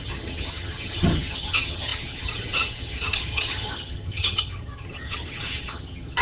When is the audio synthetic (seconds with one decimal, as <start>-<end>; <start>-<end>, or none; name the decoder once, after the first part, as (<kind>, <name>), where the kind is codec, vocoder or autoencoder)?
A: 0.0-6.2 (vocoder, HiFi-GAN)